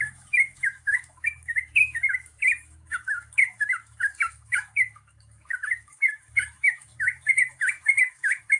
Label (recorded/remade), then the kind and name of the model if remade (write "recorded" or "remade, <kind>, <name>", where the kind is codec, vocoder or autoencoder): remade, autoencoder, DAC-VAE